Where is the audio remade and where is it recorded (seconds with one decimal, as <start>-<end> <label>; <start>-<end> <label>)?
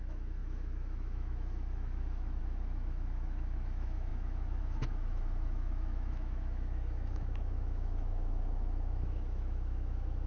0.0-10.3 remade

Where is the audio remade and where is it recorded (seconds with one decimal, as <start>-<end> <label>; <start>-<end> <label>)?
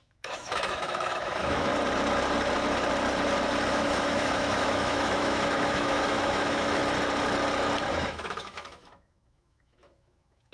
0.0-1.7 remade; 1.7-3.7 recorded; 3.7-6.8 remade; 6.8-7.9 recorded; 7.9-10.5 remade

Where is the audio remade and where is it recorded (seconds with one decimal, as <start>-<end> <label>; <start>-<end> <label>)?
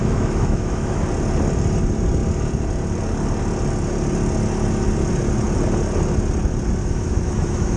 0.0-1.0 remade; 1.0-6.8 recorded; 6.8-7.8 remade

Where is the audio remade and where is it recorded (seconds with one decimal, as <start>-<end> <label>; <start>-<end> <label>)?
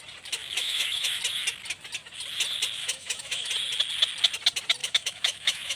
0.0-0.4 recorded; 0.4-1.2 remade; 1.2-2.8 recorded; 2.8-3.5 remade; 3.5-4.8 recorded; 4.8-5.8 remade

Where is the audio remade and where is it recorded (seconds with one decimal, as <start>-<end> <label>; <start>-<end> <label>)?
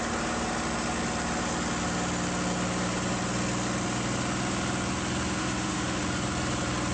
0.0-5.4 recorded; 5.4-6.0 remade; 6.0-6.9 recorded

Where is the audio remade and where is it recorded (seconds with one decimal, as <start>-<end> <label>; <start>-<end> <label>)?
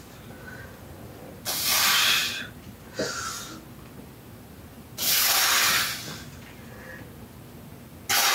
0.0-8.3 recorded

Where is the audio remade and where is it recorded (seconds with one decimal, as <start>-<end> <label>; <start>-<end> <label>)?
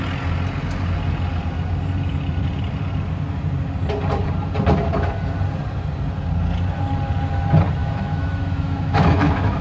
0.0-7.8 recorded; 7.8-9.6 remade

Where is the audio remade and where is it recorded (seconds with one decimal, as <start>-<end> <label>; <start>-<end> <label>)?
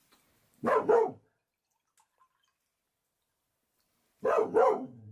0.0-5.1 recorded